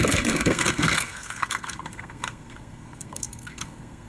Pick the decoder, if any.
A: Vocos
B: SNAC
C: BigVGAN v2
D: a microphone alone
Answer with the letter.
B